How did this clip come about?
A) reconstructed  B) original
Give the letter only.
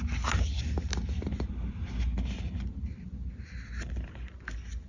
B